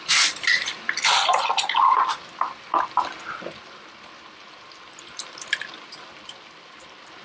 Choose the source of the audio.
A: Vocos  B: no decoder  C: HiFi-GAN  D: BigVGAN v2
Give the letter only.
D